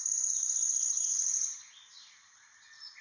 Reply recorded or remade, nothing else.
recorded